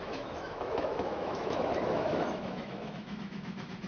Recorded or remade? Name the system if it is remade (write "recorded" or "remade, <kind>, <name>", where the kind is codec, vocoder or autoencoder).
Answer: remade, autoencoder, DAC-VAE